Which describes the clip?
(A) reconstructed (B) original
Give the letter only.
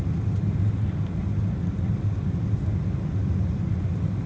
B